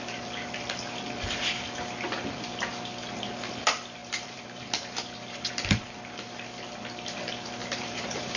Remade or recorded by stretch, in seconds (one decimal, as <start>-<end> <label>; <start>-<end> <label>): 0.0-4.0 recorded; 4.0-5.5 remade; 5.5-7.6 recorded; 7.6-8.4 remade